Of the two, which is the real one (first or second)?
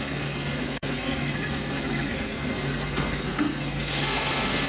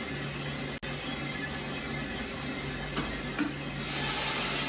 second